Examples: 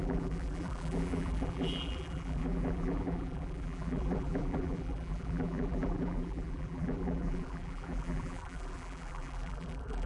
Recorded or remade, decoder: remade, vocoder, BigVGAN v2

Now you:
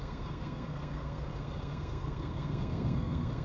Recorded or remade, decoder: remade, codec, SNAC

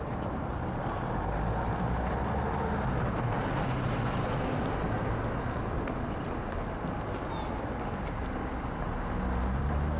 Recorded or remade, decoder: recorded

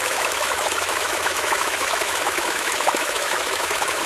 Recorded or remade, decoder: remade, autoencoder, DAC-VAE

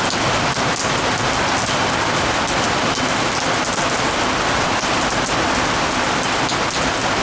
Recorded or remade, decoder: recorded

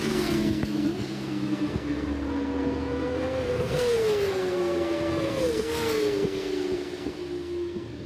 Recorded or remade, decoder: remade, codec, SNAC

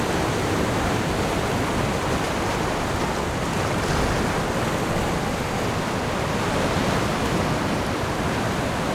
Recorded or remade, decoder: recorded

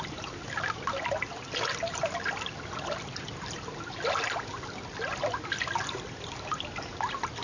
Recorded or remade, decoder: recorded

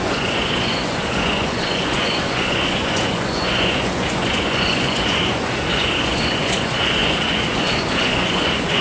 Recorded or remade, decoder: remade, vocoder, Vocos